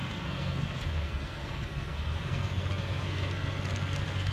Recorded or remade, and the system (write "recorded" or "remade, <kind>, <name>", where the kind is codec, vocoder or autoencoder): remade, codec, SNAC